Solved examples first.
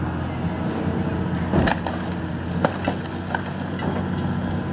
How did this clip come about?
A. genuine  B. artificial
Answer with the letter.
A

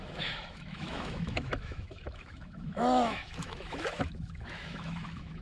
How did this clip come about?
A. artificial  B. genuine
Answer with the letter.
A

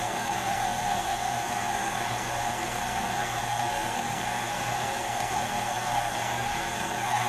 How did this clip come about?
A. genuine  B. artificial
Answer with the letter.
B